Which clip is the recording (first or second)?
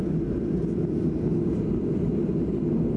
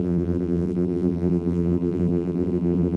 first